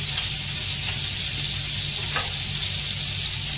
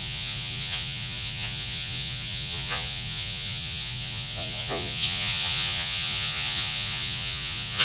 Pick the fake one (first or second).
second